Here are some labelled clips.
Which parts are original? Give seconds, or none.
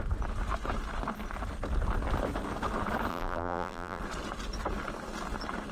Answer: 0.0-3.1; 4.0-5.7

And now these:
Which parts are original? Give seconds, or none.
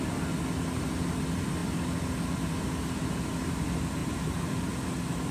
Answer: 0.0-4.0; 4.7-5.3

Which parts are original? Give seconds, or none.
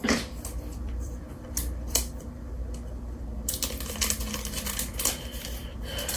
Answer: 2.6-6.2